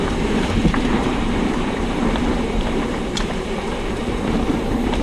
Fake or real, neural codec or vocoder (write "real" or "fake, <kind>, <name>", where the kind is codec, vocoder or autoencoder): fake, vocoder, BigVGAN v2